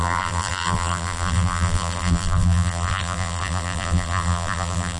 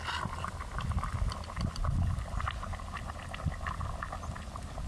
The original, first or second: second